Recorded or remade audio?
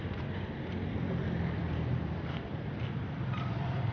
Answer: remade